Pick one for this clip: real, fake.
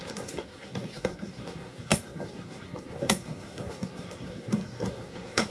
fake